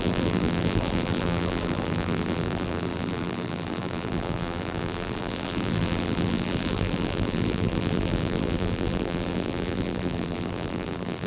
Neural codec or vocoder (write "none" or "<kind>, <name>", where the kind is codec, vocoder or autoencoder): vocoder, BigVGAN v2